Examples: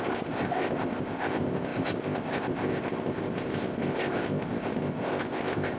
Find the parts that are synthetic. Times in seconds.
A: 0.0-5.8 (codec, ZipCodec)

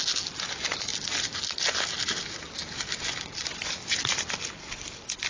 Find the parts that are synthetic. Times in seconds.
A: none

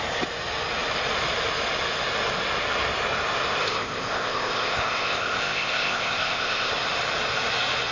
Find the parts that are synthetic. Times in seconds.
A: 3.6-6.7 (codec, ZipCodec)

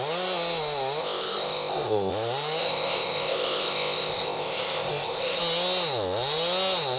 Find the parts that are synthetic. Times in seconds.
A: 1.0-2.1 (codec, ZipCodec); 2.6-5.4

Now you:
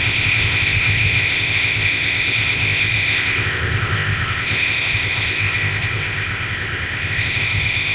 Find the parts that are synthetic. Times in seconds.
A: 0.0-7.9 (codec, ZipCodec)